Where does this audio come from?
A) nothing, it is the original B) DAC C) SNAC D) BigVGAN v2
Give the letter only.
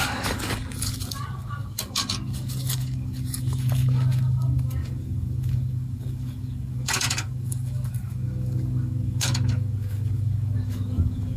B